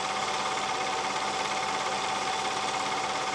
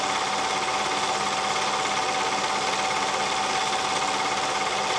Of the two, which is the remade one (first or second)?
first